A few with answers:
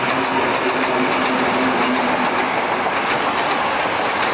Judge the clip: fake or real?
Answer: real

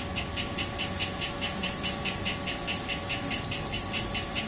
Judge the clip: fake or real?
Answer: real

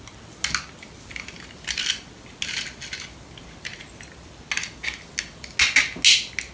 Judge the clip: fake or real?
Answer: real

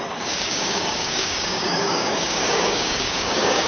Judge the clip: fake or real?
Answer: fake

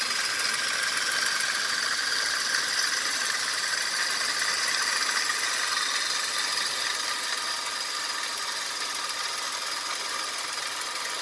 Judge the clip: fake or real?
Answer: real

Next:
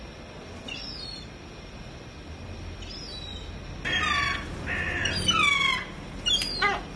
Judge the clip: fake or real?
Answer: real